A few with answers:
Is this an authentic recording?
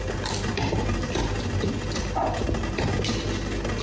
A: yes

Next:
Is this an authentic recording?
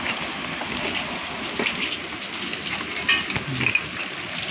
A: yes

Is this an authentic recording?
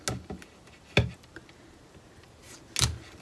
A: yes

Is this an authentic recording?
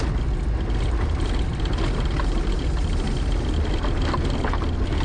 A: yes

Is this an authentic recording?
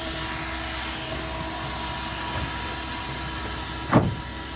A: yes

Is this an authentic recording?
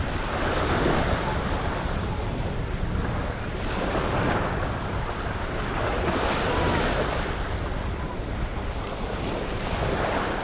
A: yes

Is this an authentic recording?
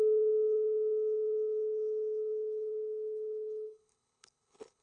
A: no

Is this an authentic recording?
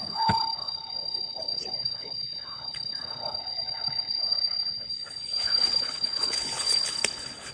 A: no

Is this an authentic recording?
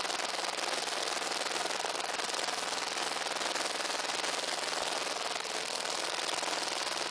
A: yes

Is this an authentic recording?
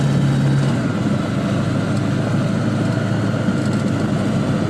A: yes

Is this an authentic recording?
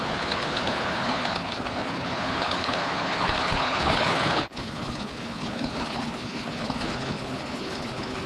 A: no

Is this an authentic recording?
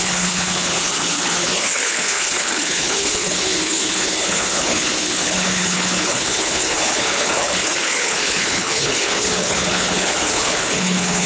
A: no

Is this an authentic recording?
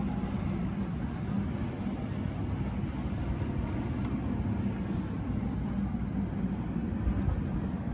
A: yes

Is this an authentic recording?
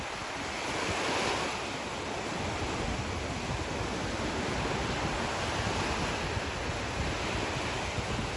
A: yes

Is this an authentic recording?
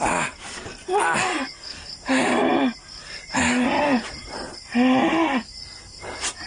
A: yes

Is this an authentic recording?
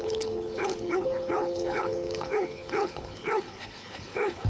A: no